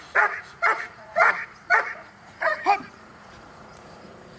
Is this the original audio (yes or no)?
no